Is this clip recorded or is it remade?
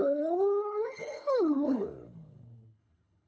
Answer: remade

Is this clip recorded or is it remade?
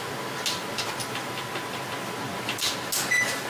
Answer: recorded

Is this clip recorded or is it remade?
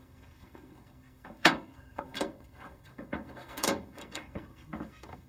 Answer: remade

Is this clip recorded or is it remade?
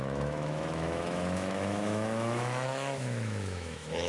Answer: remade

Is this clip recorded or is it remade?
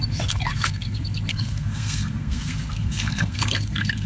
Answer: remade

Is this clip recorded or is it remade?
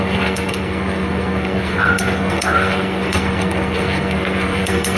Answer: remade